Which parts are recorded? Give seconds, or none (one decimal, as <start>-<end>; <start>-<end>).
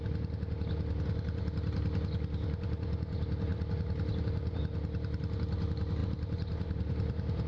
0.0-3.5; 4.6-6.0